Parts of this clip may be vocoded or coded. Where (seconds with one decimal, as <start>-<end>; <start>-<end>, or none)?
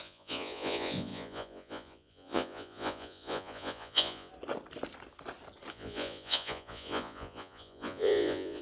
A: 0.0-4.3; 5.7-8.6